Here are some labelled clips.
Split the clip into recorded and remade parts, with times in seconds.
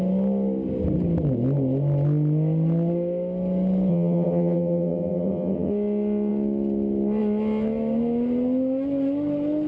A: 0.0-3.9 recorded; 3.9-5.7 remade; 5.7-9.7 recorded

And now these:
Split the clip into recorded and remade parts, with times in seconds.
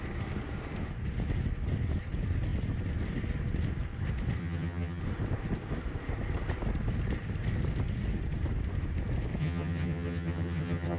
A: 0.0-4.4 recorded; 4.4-5.0 remade; 5.0-9.4 recorded; 9.4-11.0 remade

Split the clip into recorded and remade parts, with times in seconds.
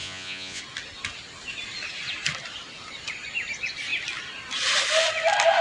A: 0.0-0.6 remade; 0.6-5.6 recorded